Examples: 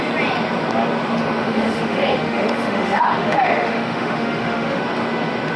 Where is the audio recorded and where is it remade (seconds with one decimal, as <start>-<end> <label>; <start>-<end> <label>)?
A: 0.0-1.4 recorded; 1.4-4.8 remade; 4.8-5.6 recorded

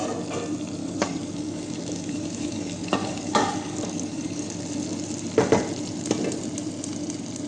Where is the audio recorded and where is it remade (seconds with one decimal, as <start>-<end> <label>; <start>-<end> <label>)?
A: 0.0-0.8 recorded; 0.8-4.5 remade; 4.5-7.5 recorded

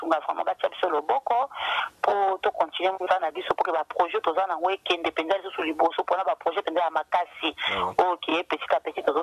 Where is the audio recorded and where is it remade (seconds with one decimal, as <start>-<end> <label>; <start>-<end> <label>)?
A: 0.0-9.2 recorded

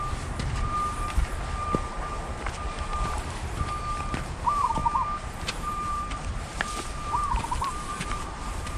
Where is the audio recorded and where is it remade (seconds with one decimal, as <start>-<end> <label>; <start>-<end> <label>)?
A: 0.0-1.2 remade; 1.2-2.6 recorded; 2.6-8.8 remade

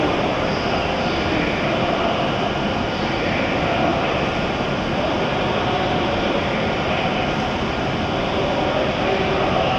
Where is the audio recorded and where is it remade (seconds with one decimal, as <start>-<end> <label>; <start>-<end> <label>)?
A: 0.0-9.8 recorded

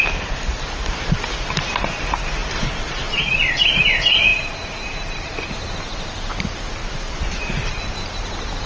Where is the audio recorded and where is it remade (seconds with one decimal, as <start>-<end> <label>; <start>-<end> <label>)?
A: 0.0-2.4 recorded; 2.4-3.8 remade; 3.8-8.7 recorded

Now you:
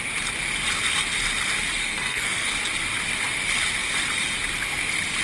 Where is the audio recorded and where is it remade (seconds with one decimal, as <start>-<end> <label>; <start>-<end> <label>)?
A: 0.0-1.8 recorded; 1.8-2.5 remade; 2.5-5.2 recorded

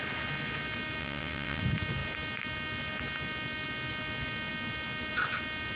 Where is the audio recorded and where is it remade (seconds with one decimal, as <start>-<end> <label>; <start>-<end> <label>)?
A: 0.0-1.0 recorded; 1.0-1.6 remade; 1.6-5.8 recorded